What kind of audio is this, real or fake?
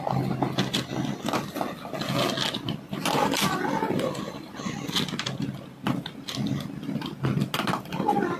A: real